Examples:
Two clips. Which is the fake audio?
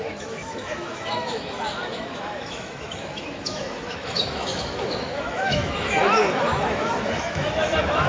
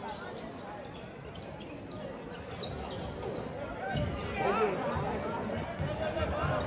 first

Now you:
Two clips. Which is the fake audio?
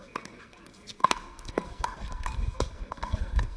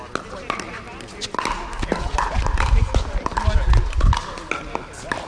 first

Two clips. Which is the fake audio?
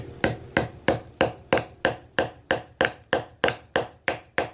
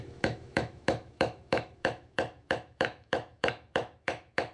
second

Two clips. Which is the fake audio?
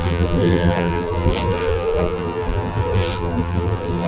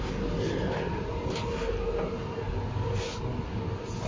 first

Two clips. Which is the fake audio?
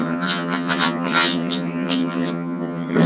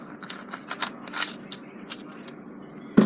first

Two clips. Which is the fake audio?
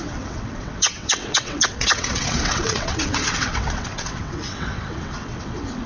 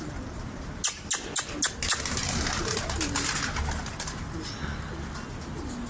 first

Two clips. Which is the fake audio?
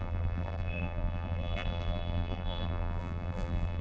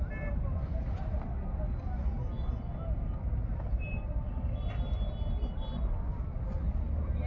first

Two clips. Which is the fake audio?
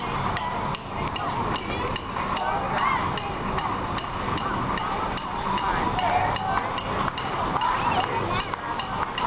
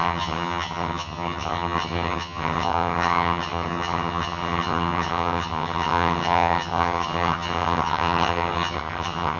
second